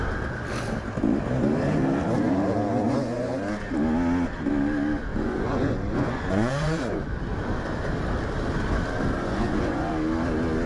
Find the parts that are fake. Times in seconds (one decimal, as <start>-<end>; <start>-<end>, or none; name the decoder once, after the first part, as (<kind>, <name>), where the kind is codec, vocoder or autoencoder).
2.8-3.3 (vocoder, Vocos); 5.1-7.1; 9.2-9.9